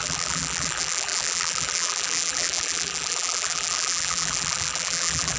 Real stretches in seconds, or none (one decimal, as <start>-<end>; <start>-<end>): none